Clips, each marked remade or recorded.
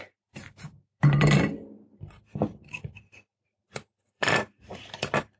remade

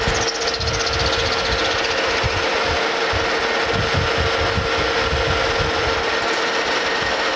recorded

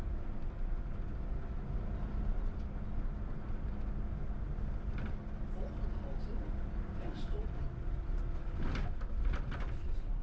recorded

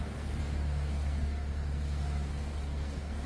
remade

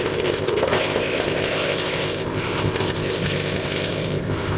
remade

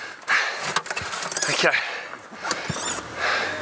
recorded